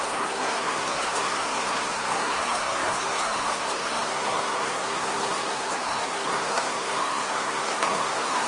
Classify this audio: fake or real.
fake